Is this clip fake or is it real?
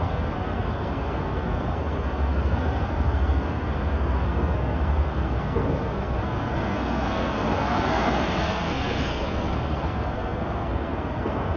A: fake